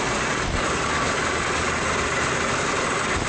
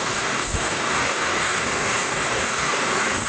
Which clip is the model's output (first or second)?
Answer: second